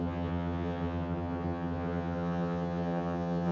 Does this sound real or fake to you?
fake